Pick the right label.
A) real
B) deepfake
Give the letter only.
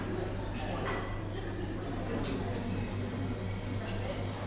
A